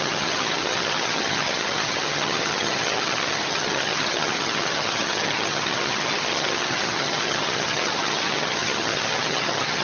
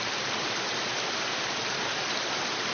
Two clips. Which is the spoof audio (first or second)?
first